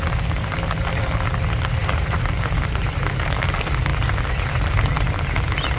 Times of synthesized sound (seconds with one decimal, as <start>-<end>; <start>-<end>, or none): 1.8-3.5